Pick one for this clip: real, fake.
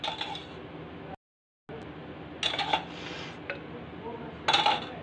real